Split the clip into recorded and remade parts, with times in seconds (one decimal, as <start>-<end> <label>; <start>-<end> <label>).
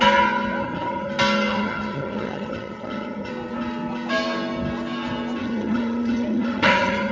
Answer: 0.0-0.6 recorded; 0.6-1.1 remade; 1.1-1.5 recorded; 1.5-3.3 remade; 3.3-5.4 recorded; 5.4-7.1 remade